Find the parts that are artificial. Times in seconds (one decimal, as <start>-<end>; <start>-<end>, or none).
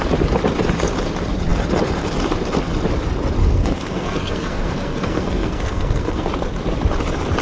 3.4-6.3